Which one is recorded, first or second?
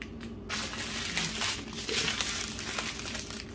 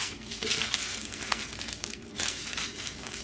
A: first